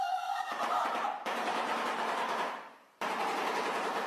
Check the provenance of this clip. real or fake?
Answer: fake